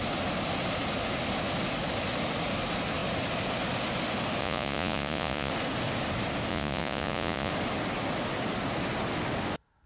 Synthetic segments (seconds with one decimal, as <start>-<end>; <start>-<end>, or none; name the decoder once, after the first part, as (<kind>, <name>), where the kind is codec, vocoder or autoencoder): 4.4-5.5 (vocoder, Vocos); 6.5-7.5